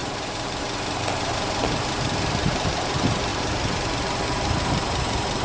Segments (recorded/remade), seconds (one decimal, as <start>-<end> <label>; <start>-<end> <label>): 0.0-5.4 remade